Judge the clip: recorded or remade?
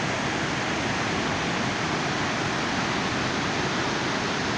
recorded